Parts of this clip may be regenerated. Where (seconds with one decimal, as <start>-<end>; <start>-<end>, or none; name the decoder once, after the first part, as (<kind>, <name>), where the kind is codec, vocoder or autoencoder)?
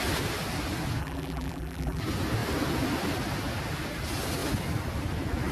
1.0-2.0 (vocoder, BigVGAN v2)